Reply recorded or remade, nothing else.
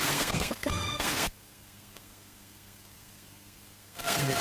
remade